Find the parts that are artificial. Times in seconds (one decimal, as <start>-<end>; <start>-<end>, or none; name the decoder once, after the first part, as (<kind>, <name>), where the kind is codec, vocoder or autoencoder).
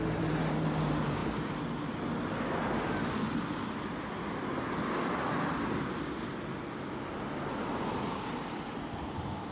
none